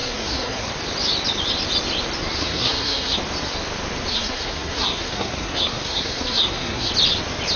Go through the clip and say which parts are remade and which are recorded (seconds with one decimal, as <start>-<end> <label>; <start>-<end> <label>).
0.0-0.7 remade; 0.7-2.4 recorded; 2.4-3.2 remade; 3.2-4.1 recorded; 4.1-6.9 remade; 6.9-7.6 recorded